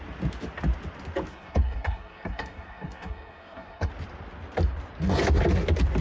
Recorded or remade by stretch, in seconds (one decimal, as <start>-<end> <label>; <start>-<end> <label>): 0.0-1.3 recorded; 1.3-3.9 remade; 3.9-6.0 recorded